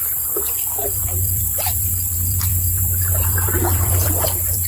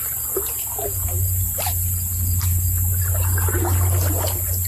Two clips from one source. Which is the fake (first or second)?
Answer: first